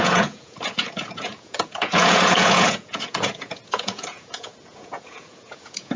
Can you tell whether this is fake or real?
fake